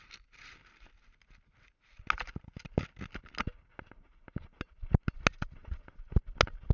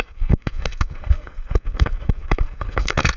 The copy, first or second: second